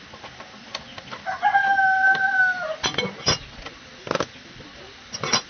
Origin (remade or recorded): recorded